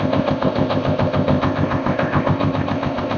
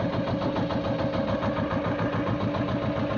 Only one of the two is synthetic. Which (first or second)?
first